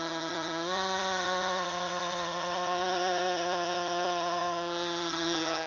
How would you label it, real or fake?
fake